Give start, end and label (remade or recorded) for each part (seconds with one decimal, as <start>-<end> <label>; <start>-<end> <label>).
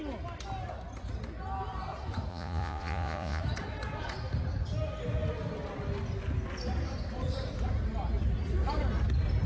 0.0-2.3 recorded; 2.3-3.4 remade; 3.4-9.5 recorded